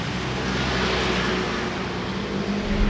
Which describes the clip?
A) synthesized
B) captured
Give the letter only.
B